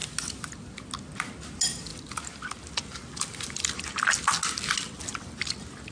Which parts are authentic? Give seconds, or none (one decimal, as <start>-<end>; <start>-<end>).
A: 0.0-5.9